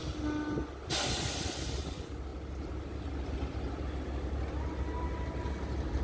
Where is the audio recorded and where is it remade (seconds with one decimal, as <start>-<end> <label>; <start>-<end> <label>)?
0.0-6.0 recorded